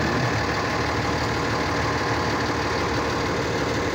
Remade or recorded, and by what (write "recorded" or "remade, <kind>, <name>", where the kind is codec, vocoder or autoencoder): recorded